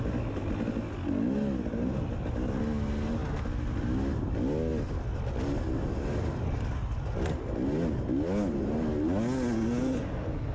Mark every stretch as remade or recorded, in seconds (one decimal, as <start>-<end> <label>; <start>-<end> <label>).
0.0-10.5 recorded